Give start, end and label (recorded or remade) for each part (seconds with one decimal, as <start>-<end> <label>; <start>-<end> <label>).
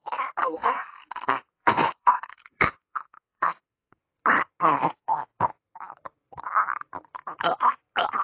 0.0-0.4 recorded; 0.4-4.0 remade; 4.0-4.6 recorded; 4.6-5.4 remade; 5.4-8.2 recorded